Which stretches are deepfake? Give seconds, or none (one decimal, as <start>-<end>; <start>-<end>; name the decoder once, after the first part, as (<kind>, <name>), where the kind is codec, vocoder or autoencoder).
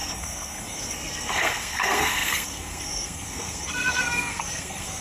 0.0-5.0 (codec, SNAC)